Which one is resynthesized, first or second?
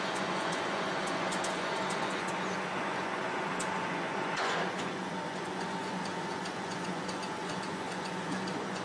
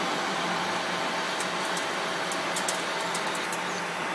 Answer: first